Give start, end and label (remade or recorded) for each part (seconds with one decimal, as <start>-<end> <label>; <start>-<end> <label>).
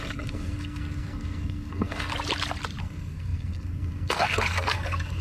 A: 0.0-2.1 remade; 2.1-2.8 recorded; 2.8-5.2 remade